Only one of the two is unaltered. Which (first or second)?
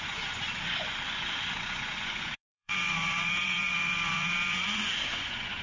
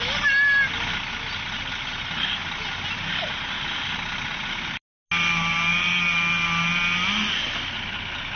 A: second